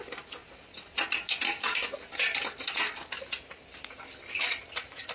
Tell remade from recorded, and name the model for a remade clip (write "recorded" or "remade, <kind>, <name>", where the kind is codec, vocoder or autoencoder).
recorded